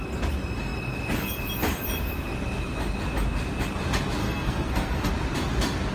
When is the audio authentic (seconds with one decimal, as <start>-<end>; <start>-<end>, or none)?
0.0-4.2; 5.1-5.9